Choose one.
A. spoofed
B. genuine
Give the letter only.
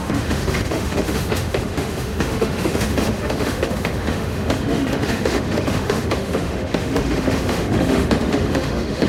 A